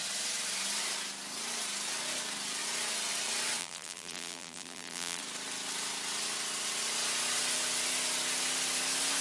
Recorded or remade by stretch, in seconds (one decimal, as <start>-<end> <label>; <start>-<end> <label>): 0.0-3.6 recorded; 3.6-5.2 remade; 5.2-9.2 recorded